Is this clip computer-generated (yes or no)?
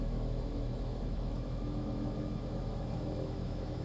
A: yes